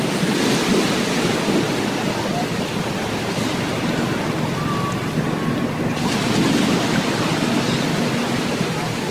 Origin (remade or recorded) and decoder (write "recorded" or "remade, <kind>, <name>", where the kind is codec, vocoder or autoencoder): recorded